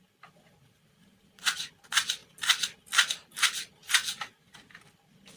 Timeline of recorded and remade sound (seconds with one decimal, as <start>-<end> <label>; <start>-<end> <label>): 0.0-1.0 recorded; 1.0-1.7 remade; 1.7-3.8 recorded; 3.8-4.9 remade; 4.9-5.4 recorded